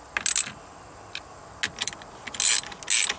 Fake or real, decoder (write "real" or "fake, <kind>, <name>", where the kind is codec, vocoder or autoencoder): real